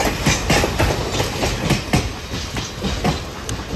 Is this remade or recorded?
recorded